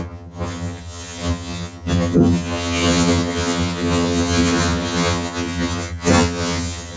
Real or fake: fake